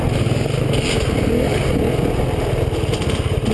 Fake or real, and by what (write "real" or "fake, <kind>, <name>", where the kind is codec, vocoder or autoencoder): real